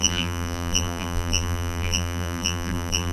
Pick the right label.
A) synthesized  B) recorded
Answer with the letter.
A